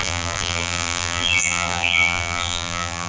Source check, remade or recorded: remade